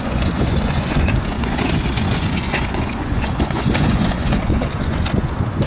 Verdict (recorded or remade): remade